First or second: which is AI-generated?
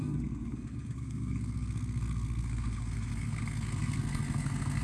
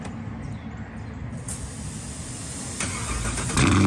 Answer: first